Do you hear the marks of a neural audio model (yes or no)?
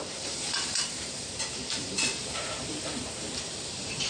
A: yes